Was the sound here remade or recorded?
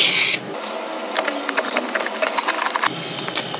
recorded